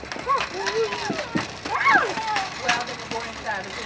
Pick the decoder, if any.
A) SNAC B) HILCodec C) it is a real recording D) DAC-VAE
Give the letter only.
C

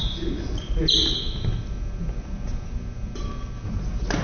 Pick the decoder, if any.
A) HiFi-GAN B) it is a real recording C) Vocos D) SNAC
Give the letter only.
B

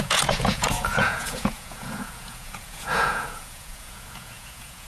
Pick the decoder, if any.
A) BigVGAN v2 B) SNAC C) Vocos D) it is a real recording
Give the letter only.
C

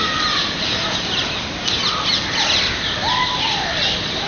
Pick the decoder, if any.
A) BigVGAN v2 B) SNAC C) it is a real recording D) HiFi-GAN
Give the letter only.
C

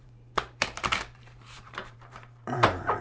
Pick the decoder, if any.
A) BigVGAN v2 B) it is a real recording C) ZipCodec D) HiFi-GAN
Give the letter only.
A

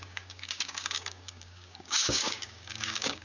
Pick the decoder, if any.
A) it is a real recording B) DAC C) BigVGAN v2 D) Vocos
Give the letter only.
B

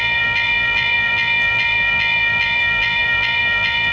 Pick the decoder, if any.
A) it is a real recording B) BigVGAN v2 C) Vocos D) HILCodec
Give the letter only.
B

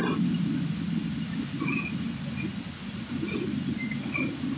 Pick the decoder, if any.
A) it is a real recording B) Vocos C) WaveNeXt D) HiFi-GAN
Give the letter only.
A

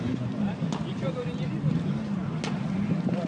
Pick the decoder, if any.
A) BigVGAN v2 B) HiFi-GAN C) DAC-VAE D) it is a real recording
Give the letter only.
D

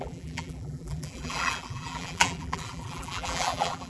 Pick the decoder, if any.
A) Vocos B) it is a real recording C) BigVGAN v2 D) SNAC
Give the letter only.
C